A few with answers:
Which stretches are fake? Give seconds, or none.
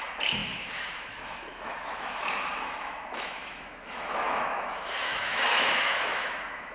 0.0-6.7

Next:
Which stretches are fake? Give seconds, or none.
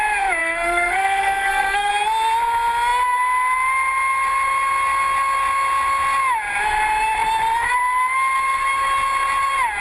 0.4-1.9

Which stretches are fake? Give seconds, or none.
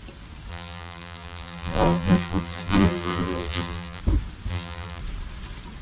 0.5-4.0; 4.5-5.0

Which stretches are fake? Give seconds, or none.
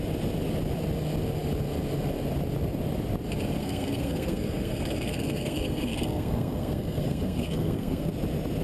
3.6-8.1